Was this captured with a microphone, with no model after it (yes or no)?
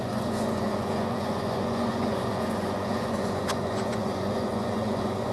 no